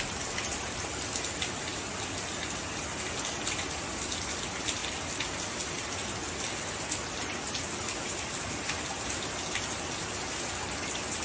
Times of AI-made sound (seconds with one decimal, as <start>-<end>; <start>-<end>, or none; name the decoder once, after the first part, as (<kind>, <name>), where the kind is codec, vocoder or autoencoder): none